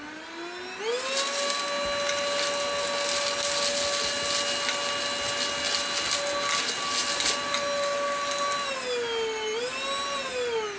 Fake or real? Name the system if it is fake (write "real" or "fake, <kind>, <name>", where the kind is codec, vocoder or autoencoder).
real